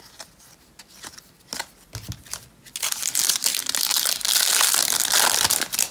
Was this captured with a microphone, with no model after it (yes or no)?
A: yes